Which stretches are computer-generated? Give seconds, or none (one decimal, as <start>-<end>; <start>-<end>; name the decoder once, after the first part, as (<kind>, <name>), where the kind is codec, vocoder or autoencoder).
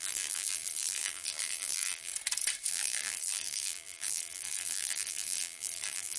0.0-2.1 (vocoder, BigVGAN v2); 2.7-6.2